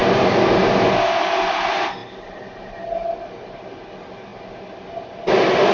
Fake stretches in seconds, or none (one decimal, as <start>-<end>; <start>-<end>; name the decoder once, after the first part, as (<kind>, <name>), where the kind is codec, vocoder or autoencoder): none